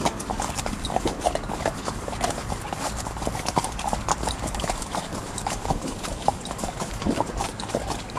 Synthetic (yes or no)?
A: yes